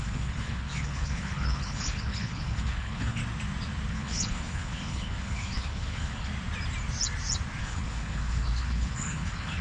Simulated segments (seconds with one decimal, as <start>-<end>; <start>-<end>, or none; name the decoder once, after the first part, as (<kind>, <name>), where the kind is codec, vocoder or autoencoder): 0.0-3.2 (codec, HILCodec); 3.9-6.3; 7.6-9.6